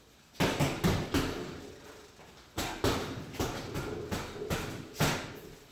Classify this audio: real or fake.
real